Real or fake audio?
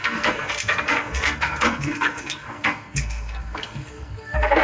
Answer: fake